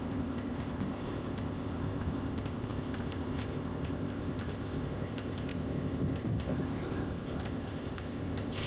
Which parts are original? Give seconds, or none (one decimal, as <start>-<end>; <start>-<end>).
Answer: none